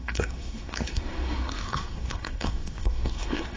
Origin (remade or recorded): remade